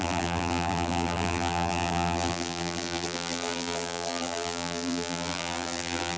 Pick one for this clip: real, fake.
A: fake